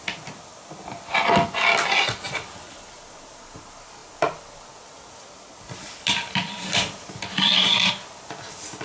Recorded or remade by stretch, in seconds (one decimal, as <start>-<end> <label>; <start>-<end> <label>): 0.0-8.8 recorded